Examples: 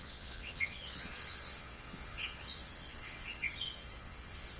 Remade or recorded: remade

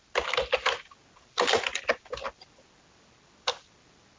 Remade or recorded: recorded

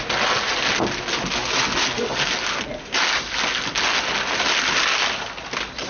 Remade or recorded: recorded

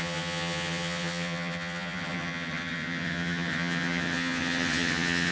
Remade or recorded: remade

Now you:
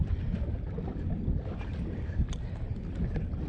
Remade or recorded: recorded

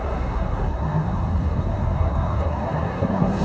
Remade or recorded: remade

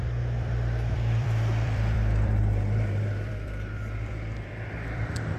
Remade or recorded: remade